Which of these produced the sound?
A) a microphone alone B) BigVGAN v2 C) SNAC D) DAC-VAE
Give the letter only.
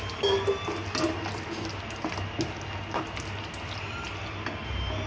A